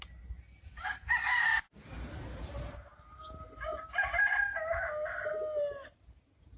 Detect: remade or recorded recorded